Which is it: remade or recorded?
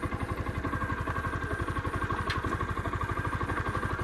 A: recorded